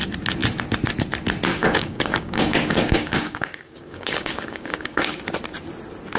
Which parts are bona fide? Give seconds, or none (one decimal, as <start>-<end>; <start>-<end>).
0.0-1.5; 5.2-6.2